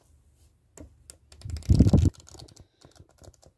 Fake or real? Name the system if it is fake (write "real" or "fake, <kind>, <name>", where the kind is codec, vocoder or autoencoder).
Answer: real